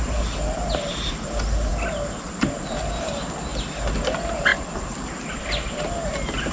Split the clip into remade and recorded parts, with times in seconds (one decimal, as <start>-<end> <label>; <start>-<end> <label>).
0.0-4.5 recorded; 4.5-5.9 remade; 5.9-6.5 recorded